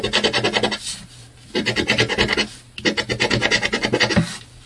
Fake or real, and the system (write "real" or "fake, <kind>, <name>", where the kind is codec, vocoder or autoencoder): real